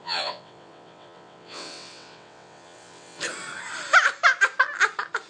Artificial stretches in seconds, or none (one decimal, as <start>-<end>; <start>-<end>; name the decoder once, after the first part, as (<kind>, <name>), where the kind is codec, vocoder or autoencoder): 0.0-3.2 (vocoder, WaveNeXt)